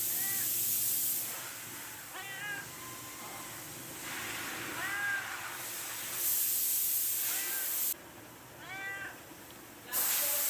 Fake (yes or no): no